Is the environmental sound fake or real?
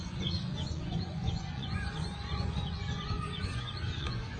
fake